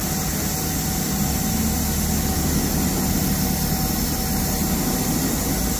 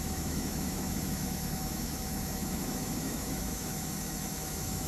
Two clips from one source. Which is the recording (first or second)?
first